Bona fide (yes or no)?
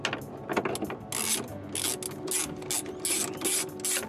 yes